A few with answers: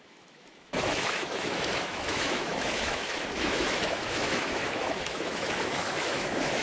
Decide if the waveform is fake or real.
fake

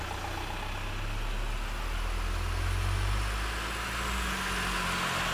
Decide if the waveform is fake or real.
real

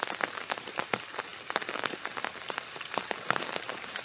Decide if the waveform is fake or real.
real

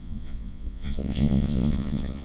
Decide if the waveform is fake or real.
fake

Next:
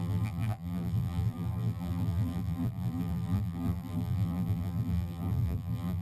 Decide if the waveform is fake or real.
fake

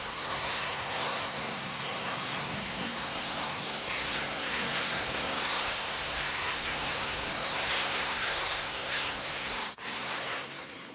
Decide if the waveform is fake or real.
fake